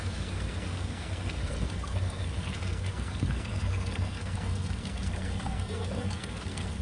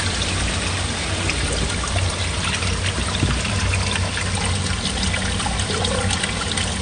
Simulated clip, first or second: first